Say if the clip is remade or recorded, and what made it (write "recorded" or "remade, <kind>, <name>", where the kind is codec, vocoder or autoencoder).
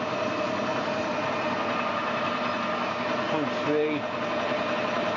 recorded